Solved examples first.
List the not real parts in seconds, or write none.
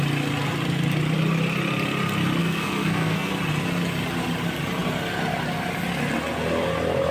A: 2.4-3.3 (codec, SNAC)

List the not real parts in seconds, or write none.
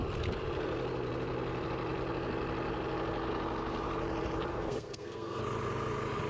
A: 4.5-5.4 (codec, SNAC)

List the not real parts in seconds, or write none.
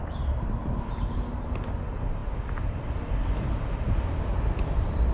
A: none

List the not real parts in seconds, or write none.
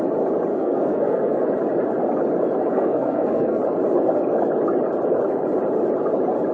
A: 0.5-1.4 (codec, SNAC); 2.7-3.6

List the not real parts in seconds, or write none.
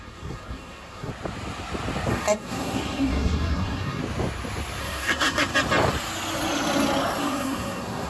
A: 0.0-1.1 (codec, SNAC); 2.1-4.0; 4.8-5.5; 7.2-8.1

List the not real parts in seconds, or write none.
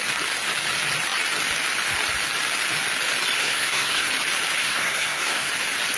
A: 3.4-4.1 (codec, SNAC); 4.6-5.5